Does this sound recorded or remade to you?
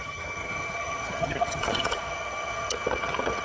remade